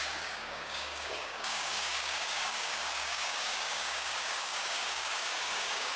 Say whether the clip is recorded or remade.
remade